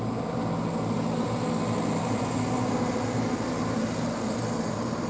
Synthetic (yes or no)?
no